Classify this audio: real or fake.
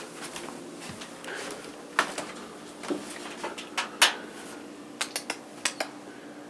real